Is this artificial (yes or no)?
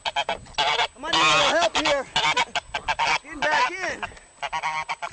no